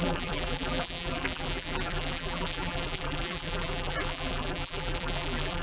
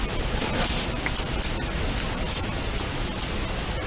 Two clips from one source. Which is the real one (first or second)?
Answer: second